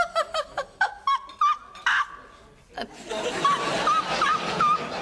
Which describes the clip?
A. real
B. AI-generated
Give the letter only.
A